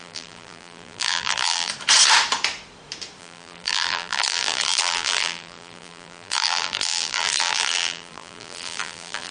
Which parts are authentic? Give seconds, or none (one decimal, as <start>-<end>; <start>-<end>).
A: 1.7-3.2